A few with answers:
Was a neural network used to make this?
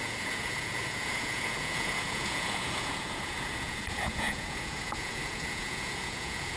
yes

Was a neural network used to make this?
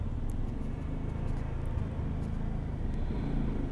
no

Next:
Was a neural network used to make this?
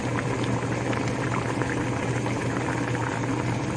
no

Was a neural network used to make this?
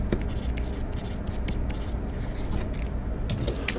no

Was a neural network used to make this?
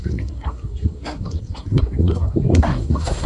yes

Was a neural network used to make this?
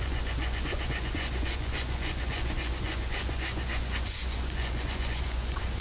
yes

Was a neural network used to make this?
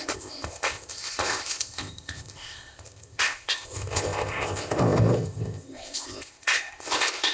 yes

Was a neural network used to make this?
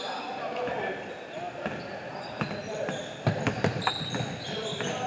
no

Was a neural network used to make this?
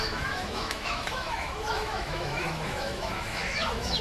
yes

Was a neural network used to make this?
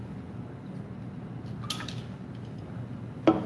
no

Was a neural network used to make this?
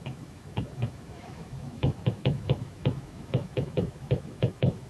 yes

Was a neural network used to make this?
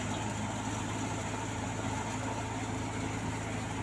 no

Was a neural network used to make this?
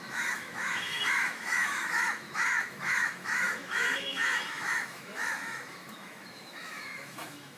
yes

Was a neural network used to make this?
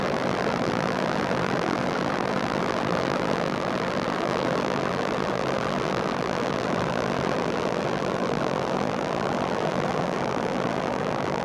yes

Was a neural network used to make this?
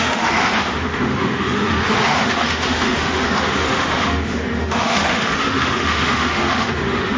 yes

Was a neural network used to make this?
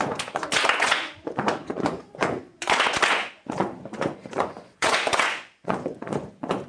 yes